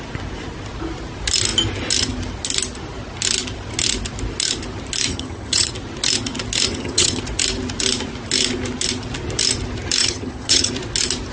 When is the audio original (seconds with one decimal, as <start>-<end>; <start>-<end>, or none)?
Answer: 0.0-5.1; 5.7-6.7; 7.2-10.0; 10.7-11.3